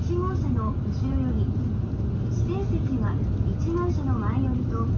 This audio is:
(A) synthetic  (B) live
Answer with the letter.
B